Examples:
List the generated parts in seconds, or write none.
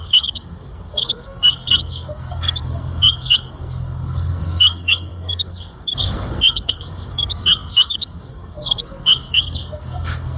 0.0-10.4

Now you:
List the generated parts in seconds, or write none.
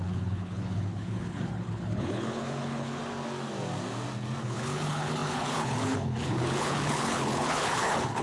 0.0-3.0; 4.4-8.2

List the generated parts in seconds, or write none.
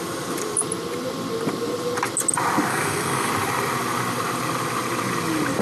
2.7-3.3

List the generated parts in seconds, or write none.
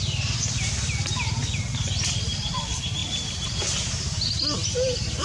3.0-4.4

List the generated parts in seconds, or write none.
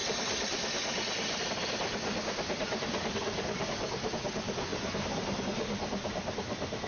4.7-5.4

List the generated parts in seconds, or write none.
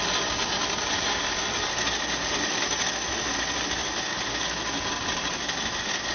none